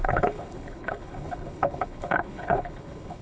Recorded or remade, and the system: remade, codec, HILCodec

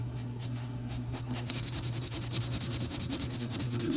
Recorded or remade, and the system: remade, codec, SNAC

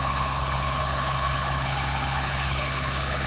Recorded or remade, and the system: remade, codec, HILCodec